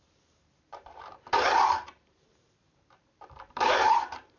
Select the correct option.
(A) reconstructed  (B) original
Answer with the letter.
A